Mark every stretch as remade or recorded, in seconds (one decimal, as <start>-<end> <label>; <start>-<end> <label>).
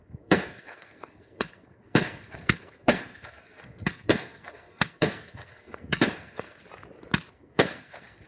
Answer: 0.0-6.6 remade; 6.6-7.3 recorded; 7.3-8.3 remade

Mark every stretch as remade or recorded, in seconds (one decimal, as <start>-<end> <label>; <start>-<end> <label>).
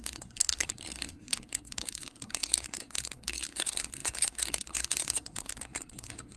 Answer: 0.0-6.4 remade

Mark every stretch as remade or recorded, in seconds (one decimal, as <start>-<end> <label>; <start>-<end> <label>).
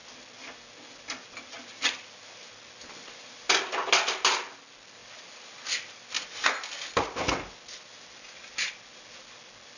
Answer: 0.0-9.8 recorded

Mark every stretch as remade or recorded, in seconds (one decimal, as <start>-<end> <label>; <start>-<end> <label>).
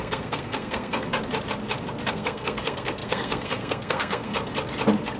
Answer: 0.0-1.1 remade; 1.1-2.1 recorded; 2.1-4.3 remade; 4.3-5.2 recorded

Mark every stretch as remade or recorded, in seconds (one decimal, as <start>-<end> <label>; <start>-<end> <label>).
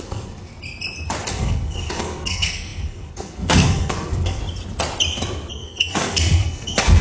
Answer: 0.0-0.5 remade; 0.5-1.3 recorded; 1.3-4.4 remade; 4.4-5.5 recorded; 5.5-7.0 remade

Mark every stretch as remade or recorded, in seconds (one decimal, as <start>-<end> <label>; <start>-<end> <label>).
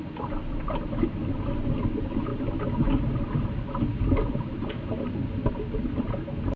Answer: 0.0-6.6 recorded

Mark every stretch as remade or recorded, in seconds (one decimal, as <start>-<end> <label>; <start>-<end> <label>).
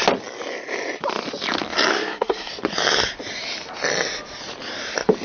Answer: 0.0-1.9 recorded; 1.9-2.5 remade; 2.5-5.2 recorded